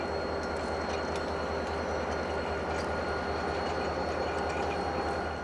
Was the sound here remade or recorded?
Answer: recorded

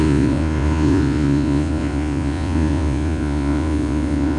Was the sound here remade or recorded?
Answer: remade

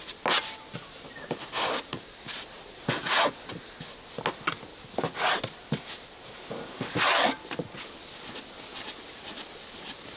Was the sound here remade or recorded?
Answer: recorded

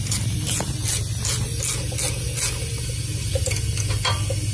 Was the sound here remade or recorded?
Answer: recorded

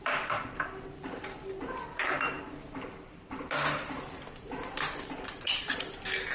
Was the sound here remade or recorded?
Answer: recorded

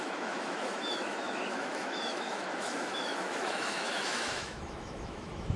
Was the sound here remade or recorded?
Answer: remade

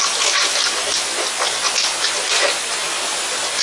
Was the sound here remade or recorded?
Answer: recorded